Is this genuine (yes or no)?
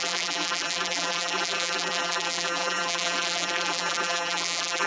no